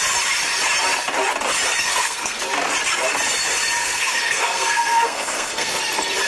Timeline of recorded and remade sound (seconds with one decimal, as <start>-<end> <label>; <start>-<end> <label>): 0.0-1.8 recorded; 1.8-2.4 remade; 2.4-3.8 recorded; 3.8-5.8 remade; 5.8-6.3 recorded